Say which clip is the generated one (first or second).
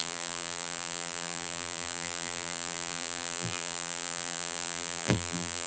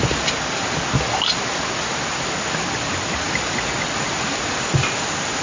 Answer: first